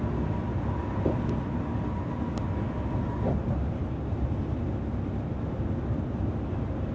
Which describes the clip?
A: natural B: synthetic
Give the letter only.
A